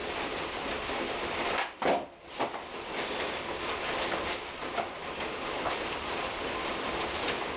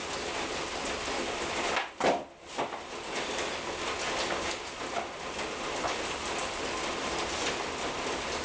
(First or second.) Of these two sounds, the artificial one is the first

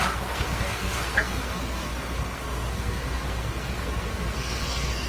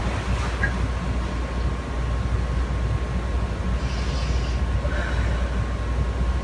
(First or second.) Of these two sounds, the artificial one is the first